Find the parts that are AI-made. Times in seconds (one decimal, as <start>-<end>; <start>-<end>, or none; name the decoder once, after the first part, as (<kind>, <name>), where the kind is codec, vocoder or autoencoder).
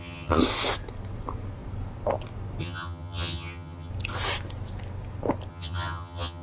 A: 0.0-0.4 (vocoder, HiFi-GAN); 2.6-3.9; 5.5-6.4